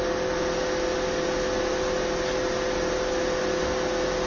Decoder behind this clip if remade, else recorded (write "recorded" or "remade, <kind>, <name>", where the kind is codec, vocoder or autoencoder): recorded